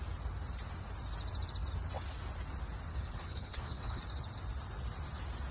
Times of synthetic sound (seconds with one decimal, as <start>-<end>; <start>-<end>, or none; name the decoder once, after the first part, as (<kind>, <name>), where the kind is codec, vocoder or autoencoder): 2.9-4.0 (codec, HILCodec)